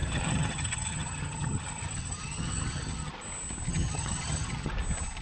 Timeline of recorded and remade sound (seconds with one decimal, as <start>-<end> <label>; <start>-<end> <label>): 0.0-3.1 remade; 3.1-3.7 recorded; 3.7-4.7 remade; 4.7-5.2 recorded